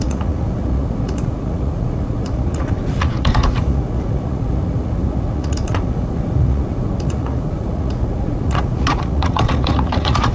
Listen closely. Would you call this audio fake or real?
fake